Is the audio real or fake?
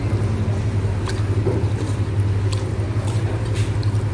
real